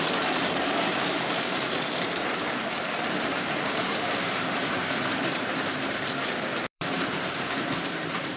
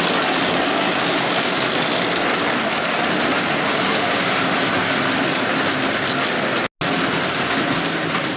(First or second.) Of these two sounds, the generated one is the first